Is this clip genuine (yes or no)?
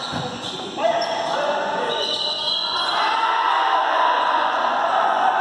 no